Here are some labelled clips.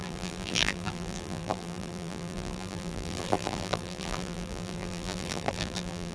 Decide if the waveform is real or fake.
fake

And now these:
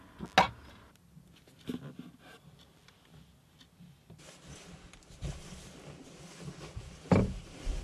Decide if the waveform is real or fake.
real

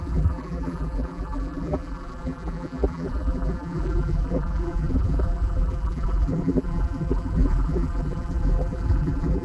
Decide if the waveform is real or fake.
fake